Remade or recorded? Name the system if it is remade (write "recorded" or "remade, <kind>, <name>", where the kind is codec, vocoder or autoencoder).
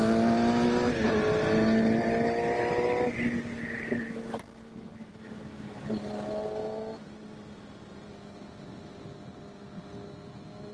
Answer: recorded